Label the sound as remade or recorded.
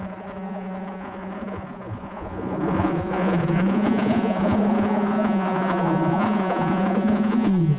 remade